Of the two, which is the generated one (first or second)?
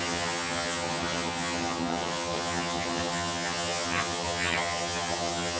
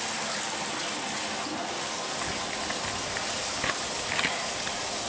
first